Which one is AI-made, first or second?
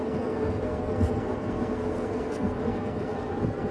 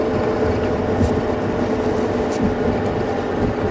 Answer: first